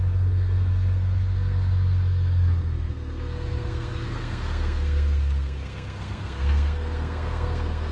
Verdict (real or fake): fake